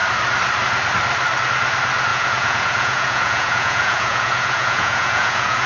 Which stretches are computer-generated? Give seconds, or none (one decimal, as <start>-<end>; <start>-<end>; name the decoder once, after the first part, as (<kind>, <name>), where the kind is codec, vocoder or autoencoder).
2.1-5.7 (vocoder, Vocos)